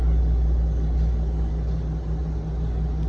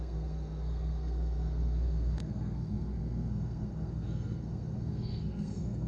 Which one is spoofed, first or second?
second